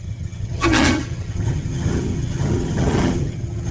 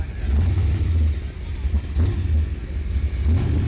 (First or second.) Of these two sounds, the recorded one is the second